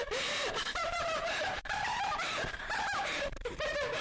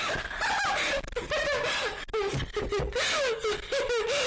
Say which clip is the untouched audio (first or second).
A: second